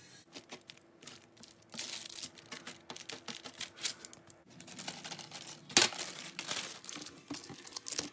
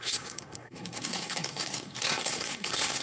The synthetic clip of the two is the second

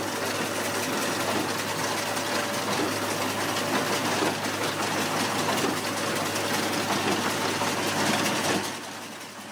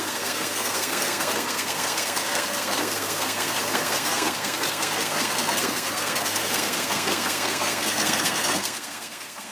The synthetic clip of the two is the second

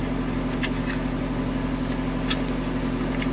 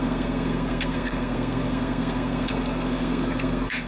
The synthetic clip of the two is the second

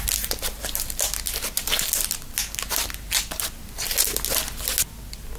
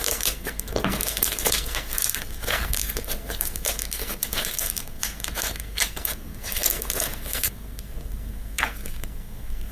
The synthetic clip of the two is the second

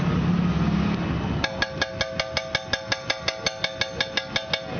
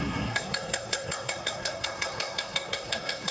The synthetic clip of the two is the second